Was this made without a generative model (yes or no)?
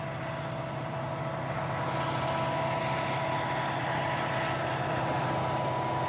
yes